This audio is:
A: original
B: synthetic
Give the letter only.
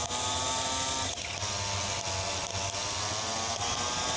A